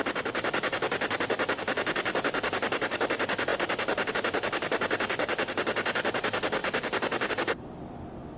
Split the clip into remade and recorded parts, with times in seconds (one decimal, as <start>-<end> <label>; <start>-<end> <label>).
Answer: 0.0-8.4 recorded